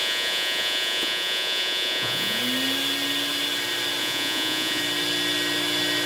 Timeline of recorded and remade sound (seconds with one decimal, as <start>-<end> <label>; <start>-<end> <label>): 0.0-2.4 remade; 2.4-4.0 recorded; 4.0-4.8 remade; 4.8-6.1 recorded